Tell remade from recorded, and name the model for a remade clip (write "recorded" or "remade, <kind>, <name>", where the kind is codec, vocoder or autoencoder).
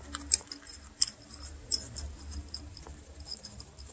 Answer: remade, vocoder, BigVGAN v2